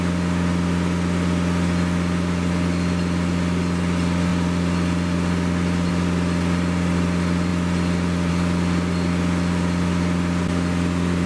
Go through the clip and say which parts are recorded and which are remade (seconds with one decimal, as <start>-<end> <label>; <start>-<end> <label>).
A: 0.0-11.3 recorded